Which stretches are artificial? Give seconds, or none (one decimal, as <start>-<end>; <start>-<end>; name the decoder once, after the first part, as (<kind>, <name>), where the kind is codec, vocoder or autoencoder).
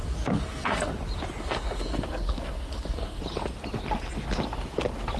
0.0-0.9 (codec, SNAC); 1.4-3.2